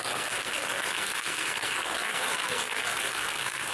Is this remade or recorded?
remade